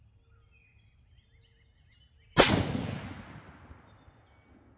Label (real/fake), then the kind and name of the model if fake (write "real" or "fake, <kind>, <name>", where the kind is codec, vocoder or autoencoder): real